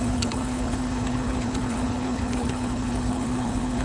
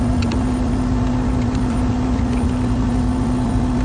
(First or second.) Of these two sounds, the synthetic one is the first